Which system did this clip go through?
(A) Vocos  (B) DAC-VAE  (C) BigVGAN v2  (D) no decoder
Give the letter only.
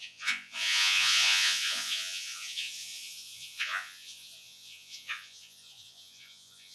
A